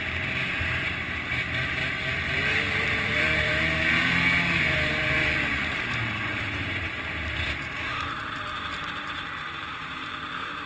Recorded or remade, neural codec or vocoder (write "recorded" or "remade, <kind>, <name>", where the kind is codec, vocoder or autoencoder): remade, vocoder, BigVGAN v2